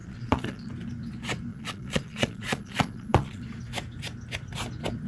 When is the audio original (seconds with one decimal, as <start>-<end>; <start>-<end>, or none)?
0.7-1.5; 3.4-5.1